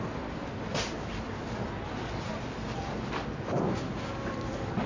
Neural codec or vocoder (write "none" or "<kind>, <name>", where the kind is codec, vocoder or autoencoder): none